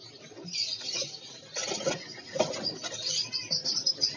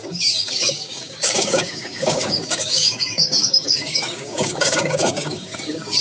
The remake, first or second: second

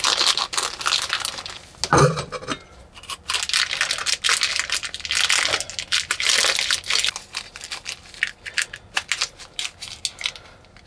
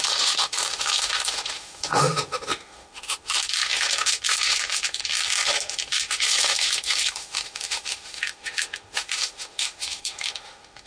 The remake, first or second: second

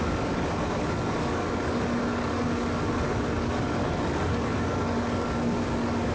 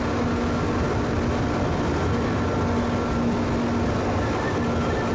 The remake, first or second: first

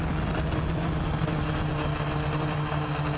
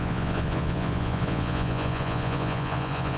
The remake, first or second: second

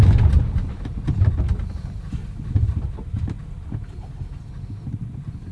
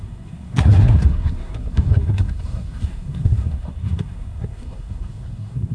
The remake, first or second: second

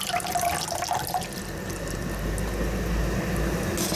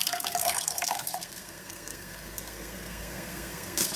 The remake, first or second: second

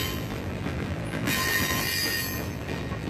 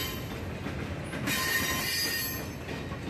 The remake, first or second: first